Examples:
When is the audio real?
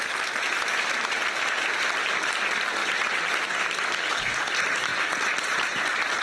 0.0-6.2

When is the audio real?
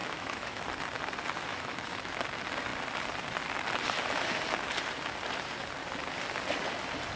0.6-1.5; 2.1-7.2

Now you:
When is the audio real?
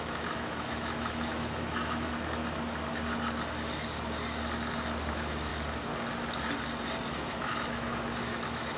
2.4-5.1; 5.5-7.1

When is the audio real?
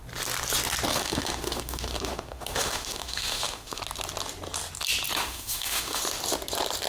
0.0-0.9; 3.8-5.2; 6.0-6.9